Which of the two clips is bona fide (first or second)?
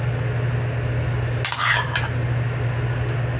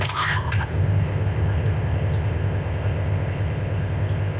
first